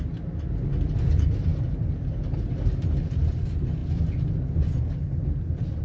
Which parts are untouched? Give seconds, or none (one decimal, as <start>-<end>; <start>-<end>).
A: 0.0-5.8